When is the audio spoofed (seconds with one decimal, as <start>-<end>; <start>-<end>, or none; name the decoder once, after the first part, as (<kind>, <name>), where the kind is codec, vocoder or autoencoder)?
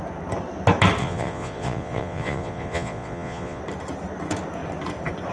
1.0-3.6 (vocoder, Vocos)